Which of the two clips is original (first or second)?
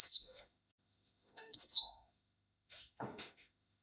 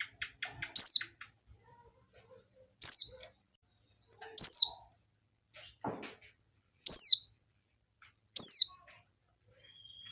second